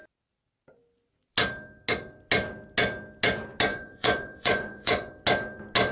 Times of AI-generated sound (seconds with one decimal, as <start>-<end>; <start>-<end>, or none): 3.7-5.1